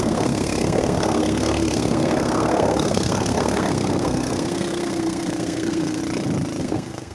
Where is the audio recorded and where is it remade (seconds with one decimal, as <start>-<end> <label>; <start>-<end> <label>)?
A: 0.0-6.0 remade; 6.0-6.6 recorded; 6.6-7.1 remade